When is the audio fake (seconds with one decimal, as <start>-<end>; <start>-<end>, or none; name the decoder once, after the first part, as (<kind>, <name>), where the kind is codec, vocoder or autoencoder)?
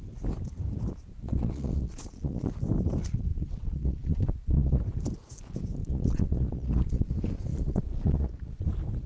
1.1-2.5 (vocoder, Vocos); 3.3-4.8; 5.8-7.1; 7.5-8.7